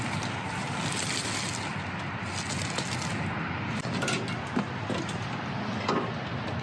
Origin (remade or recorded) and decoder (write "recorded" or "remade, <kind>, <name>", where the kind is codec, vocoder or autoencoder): recorded